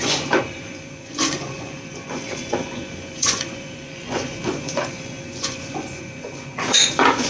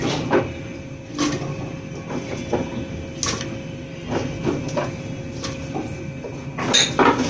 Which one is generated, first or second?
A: first